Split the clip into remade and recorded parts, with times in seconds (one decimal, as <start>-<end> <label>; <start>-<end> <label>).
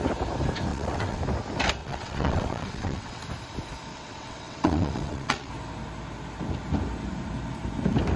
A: 0.0-0.7 recorded; 0.7-1.2 remade; 1.2-1.8 recorded; 1.8-3.2 remade; 3.2-3.9 recorded; 3.9-5.5 remade; 5.5-8.2 recorded